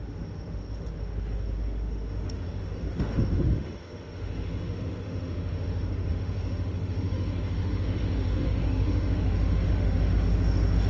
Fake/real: fake